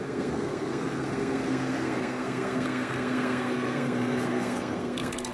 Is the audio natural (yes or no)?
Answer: no